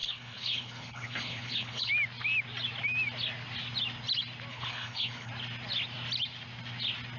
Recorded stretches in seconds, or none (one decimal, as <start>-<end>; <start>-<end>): 1.9-4.5; 5.3-7.2